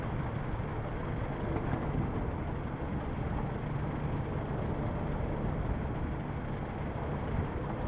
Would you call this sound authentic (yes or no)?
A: yes